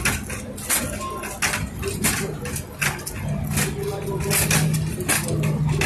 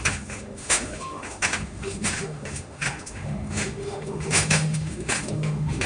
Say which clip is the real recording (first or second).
first